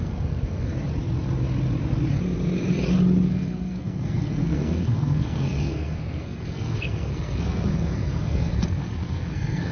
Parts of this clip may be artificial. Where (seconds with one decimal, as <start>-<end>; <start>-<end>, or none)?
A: 0.0-0.7; 3.3-9.7